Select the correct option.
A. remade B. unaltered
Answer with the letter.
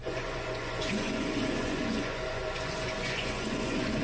A